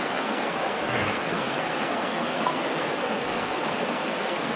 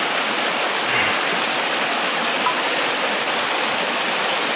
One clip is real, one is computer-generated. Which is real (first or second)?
second